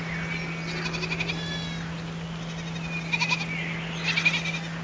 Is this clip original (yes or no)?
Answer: yes